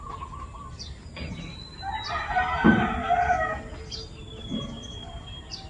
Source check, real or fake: real